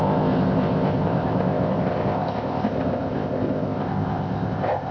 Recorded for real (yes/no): no